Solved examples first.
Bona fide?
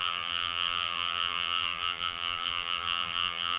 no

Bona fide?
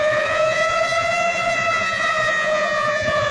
no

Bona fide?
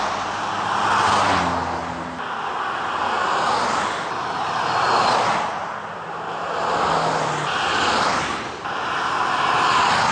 yes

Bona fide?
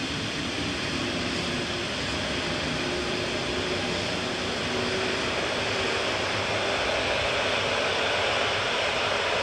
yes